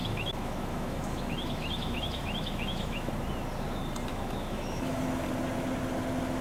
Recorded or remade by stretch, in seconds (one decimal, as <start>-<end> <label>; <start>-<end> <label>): 0.0-3.1 remade; 3.1-4.1 recorded; 4.1-5.0 remade; 5.0-6.4 recorded